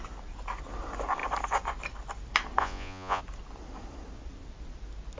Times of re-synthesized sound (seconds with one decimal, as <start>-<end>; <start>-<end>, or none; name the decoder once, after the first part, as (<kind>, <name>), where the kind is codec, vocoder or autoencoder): 2.6-3.2 (vocoder, Vocos)